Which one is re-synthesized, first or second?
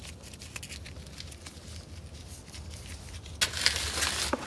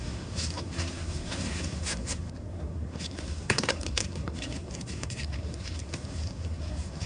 second